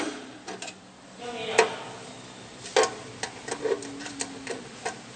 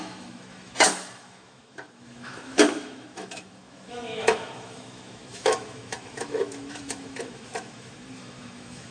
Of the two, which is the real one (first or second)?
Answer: first